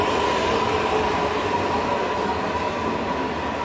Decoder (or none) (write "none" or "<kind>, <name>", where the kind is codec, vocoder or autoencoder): none